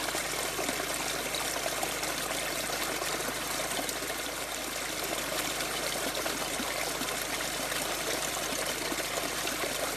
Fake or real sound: real